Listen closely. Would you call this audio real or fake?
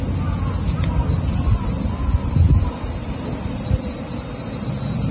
real